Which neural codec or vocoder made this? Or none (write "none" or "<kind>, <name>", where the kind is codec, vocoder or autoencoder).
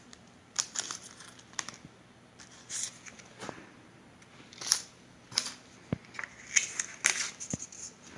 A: none